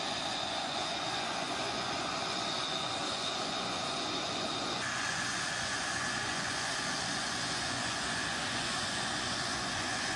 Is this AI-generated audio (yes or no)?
yes